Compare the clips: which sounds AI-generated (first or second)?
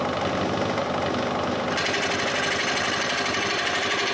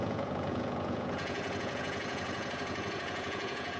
second